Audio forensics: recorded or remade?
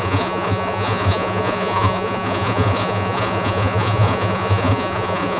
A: remade